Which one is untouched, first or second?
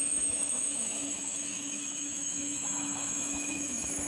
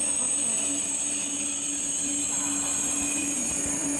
second